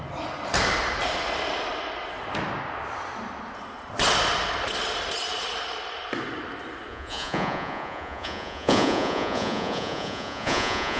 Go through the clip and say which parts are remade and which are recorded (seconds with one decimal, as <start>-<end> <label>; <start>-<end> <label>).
0.0-6.9 recorded; 6.9-11.0 remade